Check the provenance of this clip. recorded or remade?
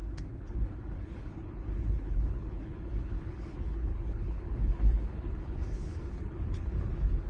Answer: remade